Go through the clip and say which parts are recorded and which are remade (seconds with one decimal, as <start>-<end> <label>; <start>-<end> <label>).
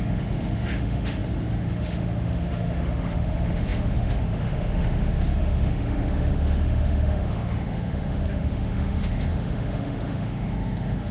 0.0-11.1 remade